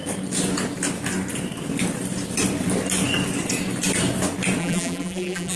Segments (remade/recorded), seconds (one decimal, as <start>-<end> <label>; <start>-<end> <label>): 0.0-4.6 recorded; 4.6-5.6 remade